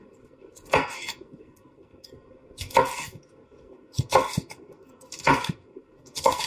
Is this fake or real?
fake